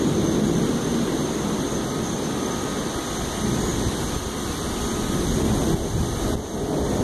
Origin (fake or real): real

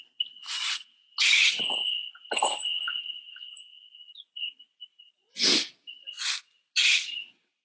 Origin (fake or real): real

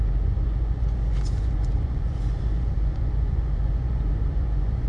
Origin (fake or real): fake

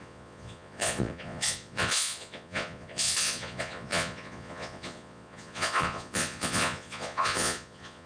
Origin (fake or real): fake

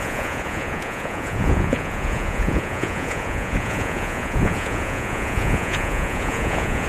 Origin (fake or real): fake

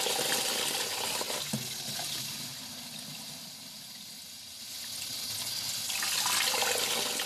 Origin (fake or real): real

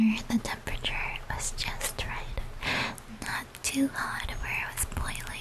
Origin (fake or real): real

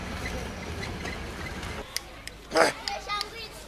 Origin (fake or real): real